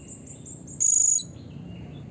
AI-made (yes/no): no